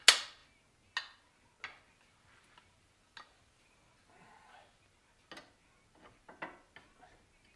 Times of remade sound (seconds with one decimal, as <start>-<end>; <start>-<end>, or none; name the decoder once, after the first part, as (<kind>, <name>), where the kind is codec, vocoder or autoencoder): none